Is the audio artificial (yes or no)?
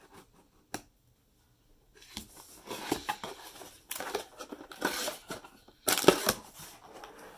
no